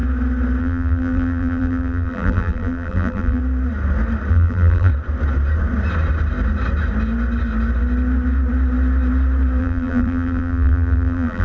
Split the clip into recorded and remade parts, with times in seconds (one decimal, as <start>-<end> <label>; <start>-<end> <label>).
0.0-0.6 recorded; 0.6-3.4 remade; 3.4-4.3 recorded; 4.3-4.9 remade; 4.9-9.6 recorded; 9.6-11.4 remade